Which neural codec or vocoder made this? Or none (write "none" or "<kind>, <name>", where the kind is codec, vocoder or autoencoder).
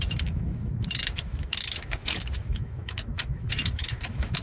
autoencoder, DAC-VAE